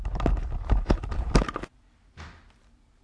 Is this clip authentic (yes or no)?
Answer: yes